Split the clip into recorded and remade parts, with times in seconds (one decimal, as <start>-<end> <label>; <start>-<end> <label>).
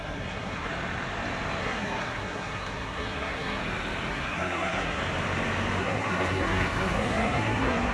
0.0-0.7 remade; 0.7-1.6 recorded; 1.6-3.6 remade; 3.6-4.1 recorded; 4.1-5.0 remade; 5.0-5.8 recorded; 5.8-7.9 remade